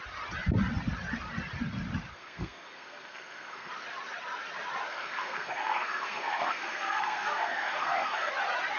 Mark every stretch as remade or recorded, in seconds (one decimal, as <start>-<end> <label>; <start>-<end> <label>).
0.0-2.1 recorded; 2.1-3.7 remade; 3.7-4.9 recorded; 4.9-8.3 remade; 8.3-8.8 recorded